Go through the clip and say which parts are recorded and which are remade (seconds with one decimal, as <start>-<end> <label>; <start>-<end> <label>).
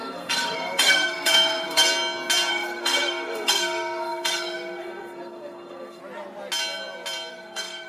0.0-1.9 remade; 1.9-2.5 recorded; 2.5-6.0 remade; 6.0-7.3 recorded; 7.3-7.9 remade